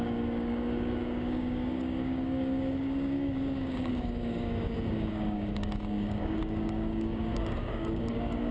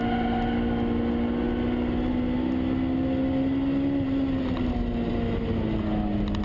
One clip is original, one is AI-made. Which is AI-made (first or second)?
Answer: first